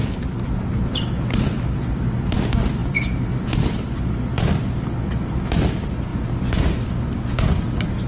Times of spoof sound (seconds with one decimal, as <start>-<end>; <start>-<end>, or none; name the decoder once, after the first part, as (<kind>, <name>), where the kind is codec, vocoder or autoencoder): 0.0-0.9 (vocoder, BigVGAN v2)